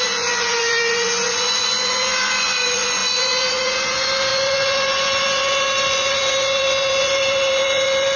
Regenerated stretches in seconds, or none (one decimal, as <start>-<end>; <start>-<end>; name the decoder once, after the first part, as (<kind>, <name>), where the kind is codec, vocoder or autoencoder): 0.0-8.2 (vocoder, Vocos)